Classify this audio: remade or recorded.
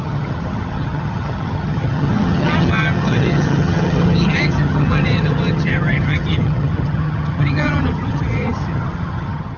remade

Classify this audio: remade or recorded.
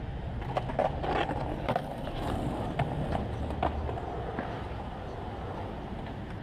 recorded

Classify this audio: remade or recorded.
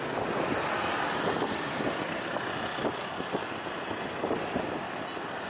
recorded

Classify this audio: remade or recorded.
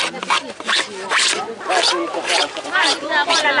recorded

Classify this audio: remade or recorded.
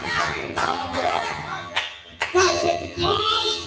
remade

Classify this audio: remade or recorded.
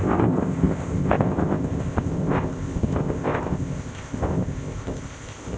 remade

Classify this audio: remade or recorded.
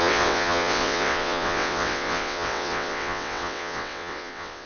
remade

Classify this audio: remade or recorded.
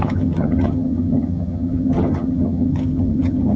remade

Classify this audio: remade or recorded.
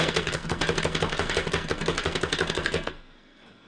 remade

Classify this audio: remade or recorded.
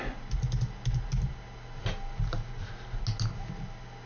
recorded